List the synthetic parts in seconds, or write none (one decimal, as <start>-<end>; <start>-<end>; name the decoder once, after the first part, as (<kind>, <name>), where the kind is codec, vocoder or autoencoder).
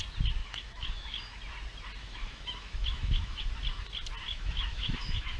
0.4-1.4 (autoencoder, DAC-VAE); 2.0-3.5; 4.3-5.4